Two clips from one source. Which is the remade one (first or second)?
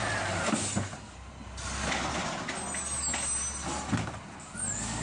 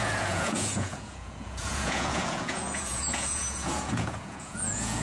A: second